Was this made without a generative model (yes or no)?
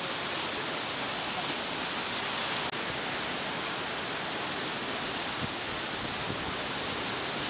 yes